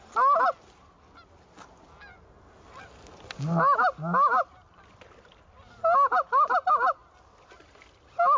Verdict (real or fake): real